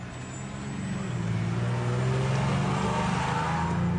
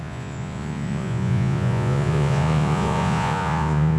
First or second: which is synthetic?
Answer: second